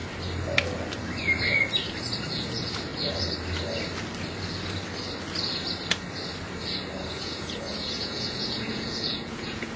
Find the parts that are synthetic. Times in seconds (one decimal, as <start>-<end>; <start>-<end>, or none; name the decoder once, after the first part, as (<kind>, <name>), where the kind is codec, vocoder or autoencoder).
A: 2.3-2.9 (vocoder, Vocos); 7.2-9.8